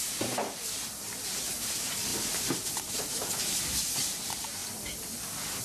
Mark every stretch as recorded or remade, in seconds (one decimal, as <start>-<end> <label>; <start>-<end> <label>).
0.0-2.1 remade; 2.1-2.9 recorded; 2.9-4.6 remade; 4.6-5.6 recorded